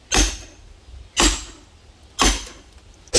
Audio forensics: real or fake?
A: real